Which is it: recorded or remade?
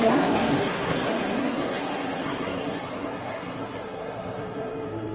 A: remade